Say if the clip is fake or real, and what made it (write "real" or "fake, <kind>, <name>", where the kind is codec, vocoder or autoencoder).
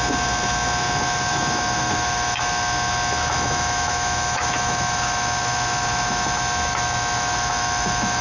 fake, autoencoder, DAC-VAE